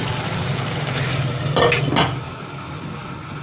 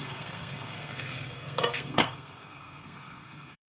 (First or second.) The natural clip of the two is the first